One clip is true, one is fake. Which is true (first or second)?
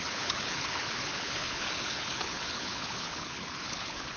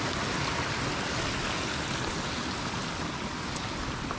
second